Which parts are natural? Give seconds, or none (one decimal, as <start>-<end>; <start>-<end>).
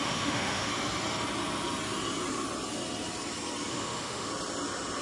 0.7-3.7; 4.3-5.0